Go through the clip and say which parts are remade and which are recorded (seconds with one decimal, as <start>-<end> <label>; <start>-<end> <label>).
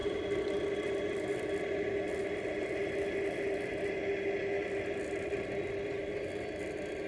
0.0-7.1 recorded